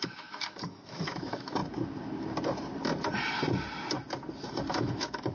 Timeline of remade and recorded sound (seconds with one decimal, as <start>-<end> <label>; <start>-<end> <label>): 0.0-1.6 remade; 1.6-4.7 recorded; 4.7-5.3 remade